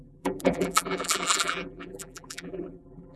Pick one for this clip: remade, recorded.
remade